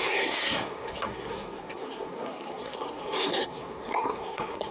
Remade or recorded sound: remade